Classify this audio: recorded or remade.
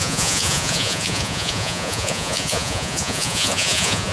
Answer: remade